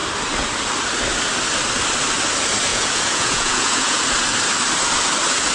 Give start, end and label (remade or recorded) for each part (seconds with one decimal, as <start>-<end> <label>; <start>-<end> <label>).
0.0-2.7 recorded; 2.7-4.0 remade; 4.0-5.5 recorded